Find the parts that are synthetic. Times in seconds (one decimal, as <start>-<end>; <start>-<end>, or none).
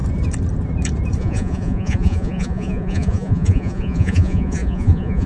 1.2-5.3